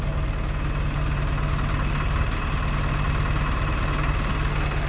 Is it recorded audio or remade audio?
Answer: recorded